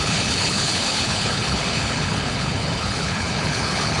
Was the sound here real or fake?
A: fake